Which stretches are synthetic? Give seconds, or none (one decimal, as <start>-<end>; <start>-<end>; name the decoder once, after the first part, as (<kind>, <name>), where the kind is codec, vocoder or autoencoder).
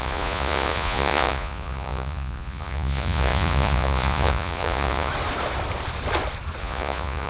0.0-5.1 (vocoder, Vocos); 6.6-7.3